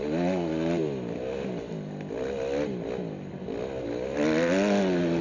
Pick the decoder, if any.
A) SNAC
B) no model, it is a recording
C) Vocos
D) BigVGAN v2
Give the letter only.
B